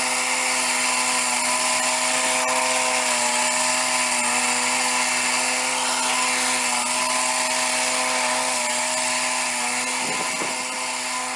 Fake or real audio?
real